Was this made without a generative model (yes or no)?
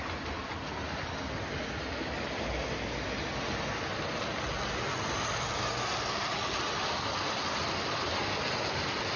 yes